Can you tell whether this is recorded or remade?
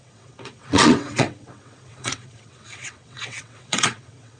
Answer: remade